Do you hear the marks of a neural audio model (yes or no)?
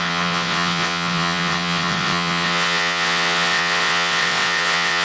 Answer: yes